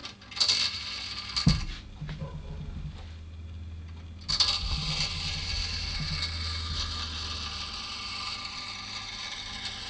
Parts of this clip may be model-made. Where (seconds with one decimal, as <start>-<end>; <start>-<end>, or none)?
none